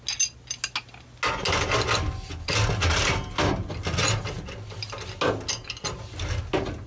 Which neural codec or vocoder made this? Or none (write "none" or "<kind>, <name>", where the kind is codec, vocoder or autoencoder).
none